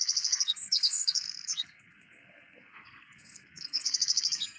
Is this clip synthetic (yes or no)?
yes